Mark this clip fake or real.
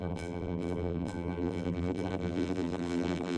fake